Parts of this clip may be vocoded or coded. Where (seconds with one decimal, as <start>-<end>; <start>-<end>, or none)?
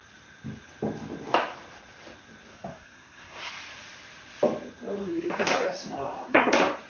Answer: 2.5-3.5; 5.0-6.5